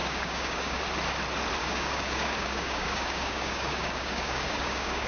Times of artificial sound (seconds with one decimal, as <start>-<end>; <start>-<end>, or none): 0.0-0.8; 1.6-5.1